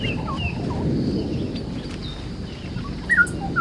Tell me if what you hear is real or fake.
real